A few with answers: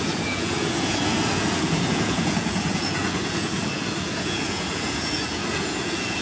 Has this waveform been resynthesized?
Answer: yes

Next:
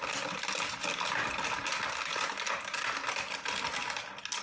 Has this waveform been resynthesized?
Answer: no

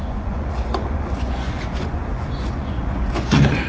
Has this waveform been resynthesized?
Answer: yes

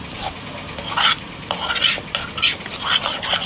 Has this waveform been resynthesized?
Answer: no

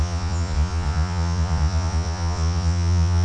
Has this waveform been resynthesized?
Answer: yes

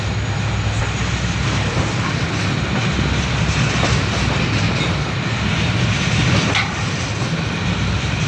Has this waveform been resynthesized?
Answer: no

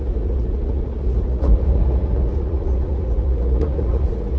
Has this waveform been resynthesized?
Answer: yes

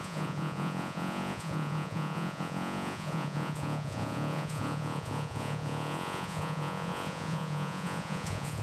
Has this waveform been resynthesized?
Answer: yes